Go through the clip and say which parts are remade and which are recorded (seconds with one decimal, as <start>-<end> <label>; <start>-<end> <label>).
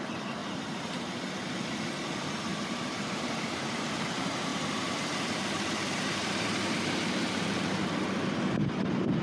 0.0-0.4 recorded; 0.4-1.2 remade; 1.2-2.5 recorded; 2.5-3.8 remade; 3.8-4.5 recorded; 4.5-7.8 remade; 7.8-9.2 recorded